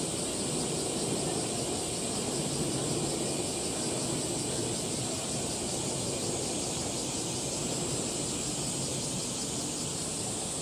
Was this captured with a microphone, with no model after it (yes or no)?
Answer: yes